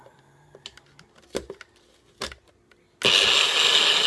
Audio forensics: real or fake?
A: real